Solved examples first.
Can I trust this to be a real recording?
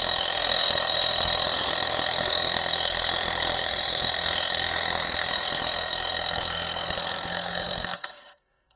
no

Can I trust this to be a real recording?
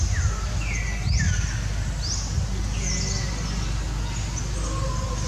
yes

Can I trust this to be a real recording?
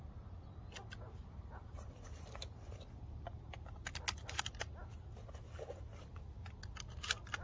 yes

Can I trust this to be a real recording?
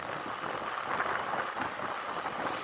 yes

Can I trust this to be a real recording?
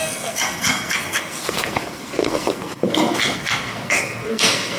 no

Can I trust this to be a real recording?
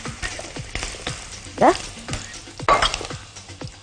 yes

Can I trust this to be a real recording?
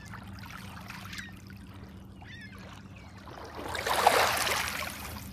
yes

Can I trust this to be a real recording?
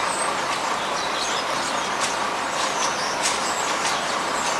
yes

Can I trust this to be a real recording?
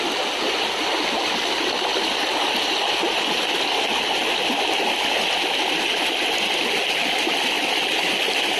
yes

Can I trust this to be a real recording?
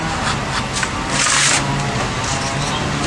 yes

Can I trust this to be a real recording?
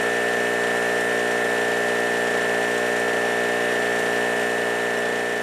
yes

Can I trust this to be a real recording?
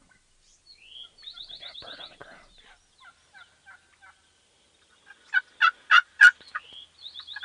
yes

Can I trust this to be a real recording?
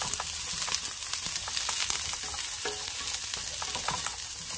yes